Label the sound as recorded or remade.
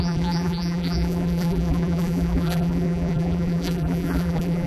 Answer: remade